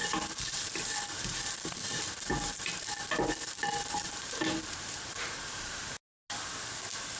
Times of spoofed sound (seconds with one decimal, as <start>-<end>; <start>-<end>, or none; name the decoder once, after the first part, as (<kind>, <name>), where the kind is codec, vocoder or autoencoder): 0.0-3.1 (vocoder, BigVGAN v2); 3.6-5.8